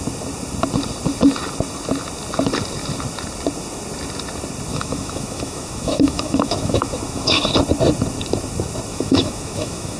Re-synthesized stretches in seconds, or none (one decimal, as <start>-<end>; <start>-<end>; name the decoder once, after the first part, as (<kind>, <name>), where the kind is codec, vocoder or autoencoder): 4.7-7.4 (autoencoder, DAC-VAE); 8.9-10.0